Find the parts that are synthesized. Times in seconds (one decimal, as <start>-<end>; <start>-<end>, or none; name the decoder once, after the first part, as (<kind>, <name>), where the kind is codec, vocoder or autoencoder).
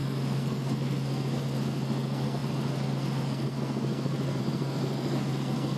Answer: 0.0-5.8 (codec, SNAC)